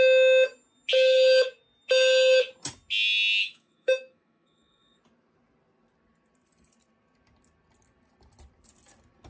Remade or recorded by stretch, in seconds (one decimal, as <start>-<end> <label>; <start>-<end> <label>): 0.0-3.4 recorded; 3.4-5.0 remade; 5.0-9.3 recorded